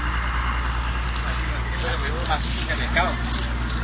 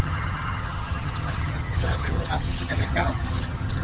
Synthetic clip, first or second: second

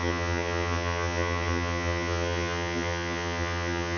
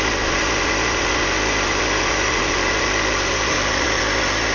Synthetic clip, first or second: first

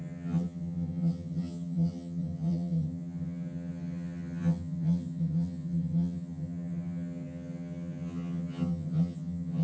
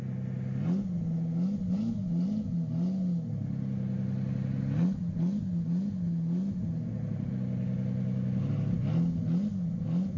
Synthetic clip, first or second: first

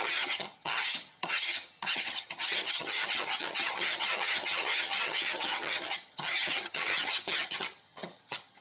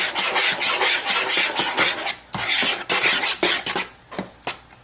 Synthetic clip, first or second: first